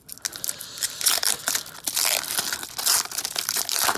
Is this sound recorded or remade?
recorded